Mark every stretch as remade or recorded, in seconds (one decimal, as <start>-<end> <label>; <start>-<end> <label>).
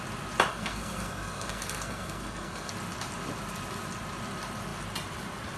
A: 0.0-0.5 recorded; 0.5-2.7 remade; 2.7-5.6 recorded